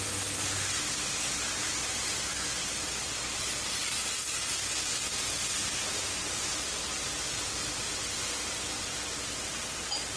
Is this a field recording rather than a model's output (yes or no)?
yes